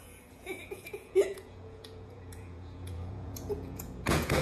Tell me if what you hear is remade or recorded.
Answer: remade